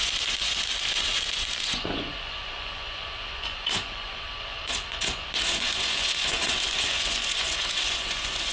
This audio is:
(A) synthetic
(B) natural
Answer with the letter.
A